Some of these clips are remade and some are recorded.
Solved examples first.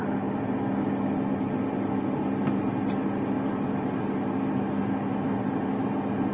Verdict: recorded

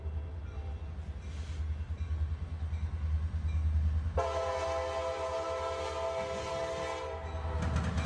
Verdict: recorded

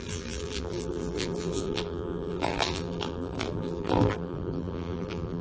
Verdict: remade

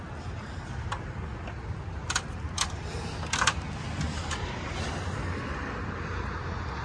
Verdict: recorded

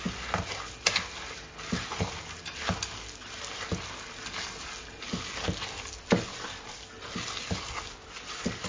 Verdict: recorded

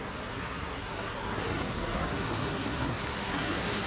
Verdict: remade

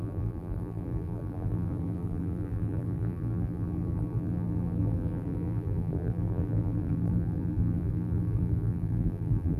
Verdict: remade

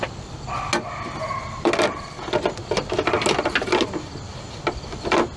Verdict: recorded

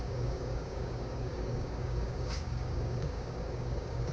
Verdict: remade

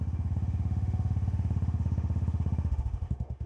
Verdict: remade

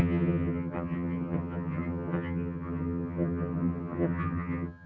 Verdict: remade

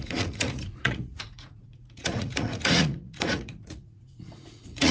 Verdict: remade